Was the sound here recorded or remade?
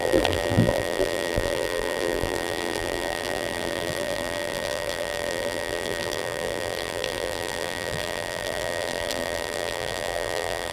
remade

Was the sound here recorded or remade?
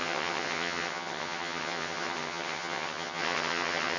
remade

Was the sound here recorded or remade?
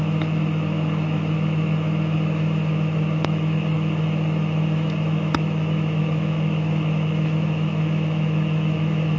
remade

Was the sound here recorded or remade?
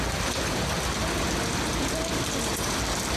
recorded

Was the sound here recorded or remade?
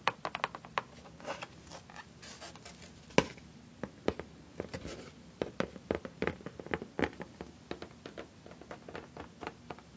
recorded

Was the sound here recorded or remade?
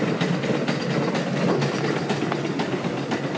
recorded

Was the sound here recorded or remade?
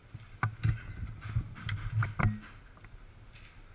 recorded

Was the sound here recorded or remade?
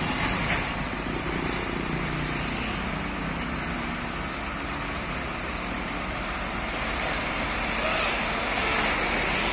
recorded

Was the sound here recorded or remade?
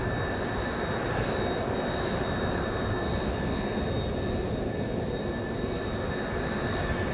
recorded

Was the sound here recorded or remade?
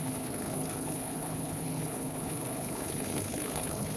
remade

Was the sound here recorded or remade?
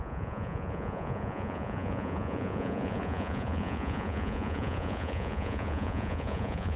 remade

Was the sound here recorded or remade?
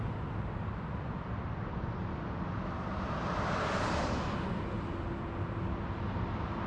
recorded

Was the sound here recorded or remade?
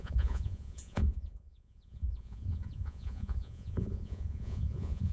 remade